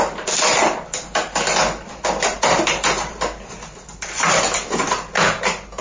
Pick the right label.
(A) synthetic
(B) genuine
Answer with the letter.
B